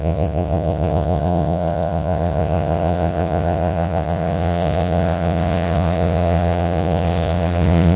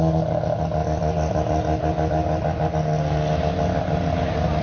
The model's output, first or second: first